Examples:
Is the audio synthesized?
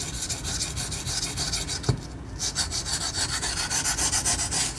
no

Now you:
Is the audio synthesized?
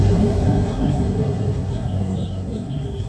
yes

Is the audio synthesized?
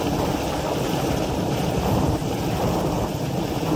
yes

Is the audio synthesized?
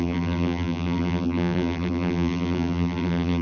yes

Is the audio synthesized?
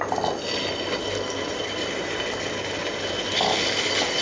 no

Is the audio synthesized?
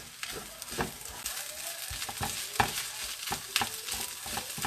no